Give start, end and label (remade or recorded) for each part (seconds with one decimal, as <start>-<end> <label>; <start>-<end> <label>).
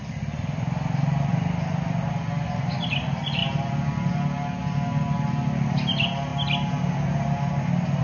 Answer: 0.0-1.3 remade; 1.3-2.1 recorded; 2.1-6.3 remade; 6.3-8.0 recorded